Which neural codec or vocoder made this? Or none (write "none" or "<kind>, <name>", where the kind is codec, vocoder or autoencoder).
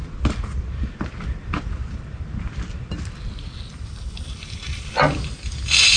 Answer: none